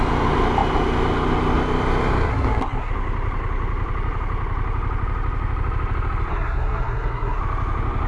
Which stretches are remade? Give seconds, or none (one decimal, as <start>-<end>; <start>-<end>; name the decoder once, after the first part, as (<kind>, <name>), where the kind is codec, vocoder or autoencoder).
2.3-2.9 (codec, SNAC); 6.3-7.4